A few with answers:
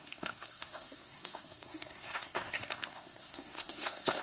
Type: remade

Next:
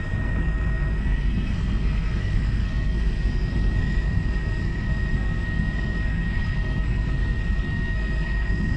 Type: remade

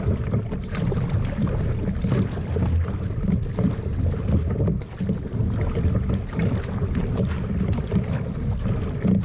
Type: recorded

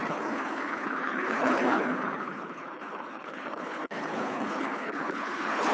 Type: remade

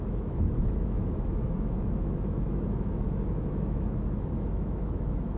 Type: remade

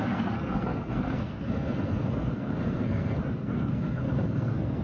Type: remade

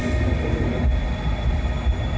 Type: recorded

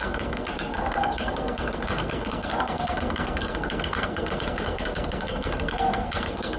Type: remade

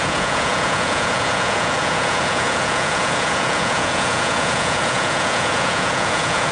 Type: remade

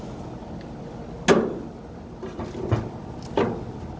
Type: recorded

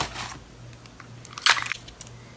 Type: recorded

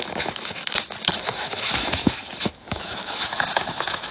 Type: remade